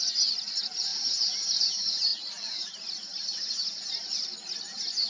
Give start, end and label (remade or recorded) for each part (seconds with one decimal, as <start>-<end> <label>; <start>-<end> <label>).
0.0-5.1 recorded